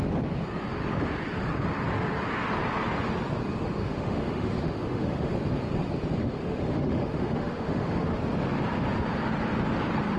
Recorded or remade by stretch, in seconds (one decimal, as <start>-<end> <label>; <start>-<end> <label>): 0.0-3.8 recorded; 3.8-5.3 remade; 5.3-6.2 recorded; 6.2-8.2 remade; 8.2-10.2 recorded